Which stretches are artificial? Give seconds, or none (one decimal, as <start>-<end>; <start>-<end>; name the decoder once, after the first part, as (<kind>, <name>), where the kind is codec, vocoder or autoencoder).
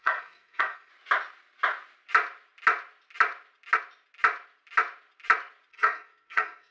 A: 0.0-0.9 (codec, SNAC); 5.7-6.7